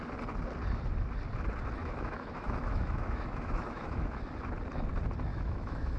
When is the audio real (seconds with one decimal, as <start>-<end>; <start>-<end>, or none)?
0.0-1.8; 4.2-5.3